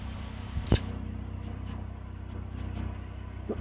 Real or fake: fake